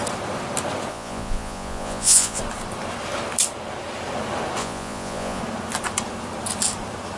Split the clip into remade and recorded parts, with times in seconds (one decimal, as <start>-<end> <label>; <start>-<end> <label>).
0.0-0.9 recorded; 0.9-2.4 remade; 2.4-4.6 recorded; 4.6-5.4 remade; 5.4-7.2 recorded